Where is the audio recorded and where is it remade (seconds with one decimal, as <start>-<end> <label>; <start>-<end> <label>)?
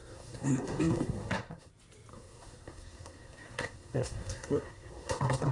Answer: 0.0-1.7 remade; 1.7-2.1 recorded; 2.1-5.5 remade